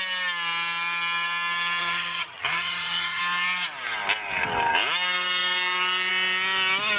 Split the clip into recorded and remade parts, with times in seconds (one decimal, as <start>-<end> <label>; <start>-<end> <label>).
0.0-1.8 recorded; 1.8-3.2 remade; 3.2-7.0 recorded